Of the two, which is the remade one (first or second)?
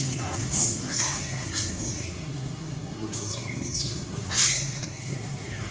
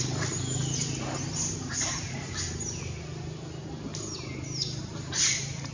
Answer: first